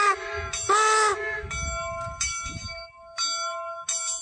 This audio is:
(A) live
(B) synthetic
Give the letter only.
A